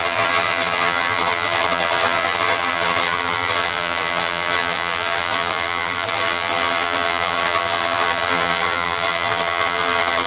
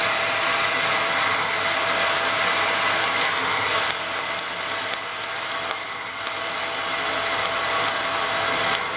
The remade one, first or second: first